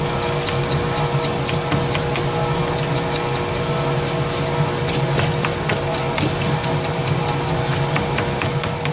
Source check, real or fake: real